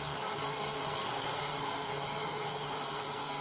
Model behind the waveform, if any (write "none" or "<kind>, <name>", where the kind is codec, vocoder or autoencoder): codec, SNAC